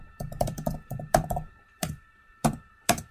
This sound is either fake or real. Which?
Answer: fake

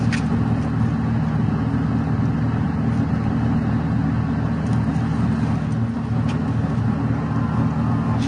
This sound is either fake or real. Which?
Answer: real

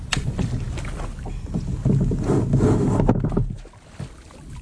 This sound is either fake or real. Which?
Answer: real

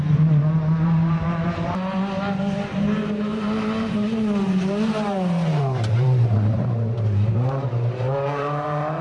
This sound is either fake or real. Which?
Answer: fake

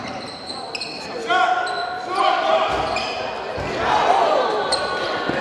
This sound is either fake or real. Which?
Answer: real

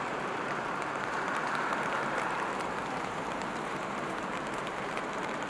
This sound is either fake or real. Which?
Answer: fake